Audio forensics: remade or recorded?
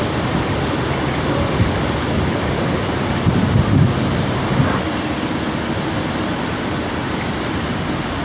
recorded